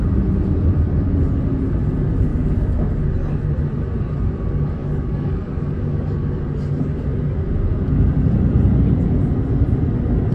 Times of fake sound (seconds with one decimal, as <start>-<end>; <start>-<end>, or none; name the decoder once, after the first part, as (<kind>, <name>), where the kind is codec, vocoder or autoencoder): 2.3-3.0 (codec, DAC); 4.8-6.4